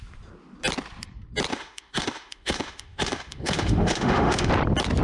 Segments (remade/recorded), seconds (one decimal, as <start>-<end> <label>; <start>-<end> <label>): 0.0-1.5 recorded; 1.5-4.5 remade; 4.5-5.0 recorded